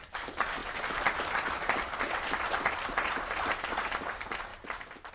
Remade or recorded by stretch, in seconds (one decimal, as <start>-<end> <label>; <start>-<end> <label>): 0.0-5.1 recorded